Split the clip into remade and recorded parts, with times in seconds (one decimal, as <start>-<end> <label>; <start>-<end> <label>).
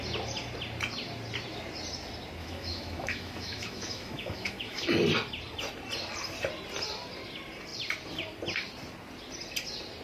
0.0-2.4 recorded; 2.4-4.9 remade; 4.9-10.0 recorded